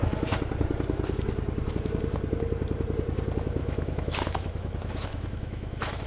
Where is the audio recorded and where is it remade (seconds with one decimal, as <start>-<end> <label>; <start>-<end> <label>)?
0.0-3.6 recorded; 3.6-6.1 remade